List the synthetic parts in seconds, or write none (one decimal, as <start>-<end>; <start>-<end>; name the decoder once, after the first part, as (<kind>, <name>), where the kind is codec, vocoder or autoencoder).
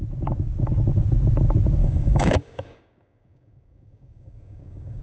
1.8-5.0 (codec, DAC)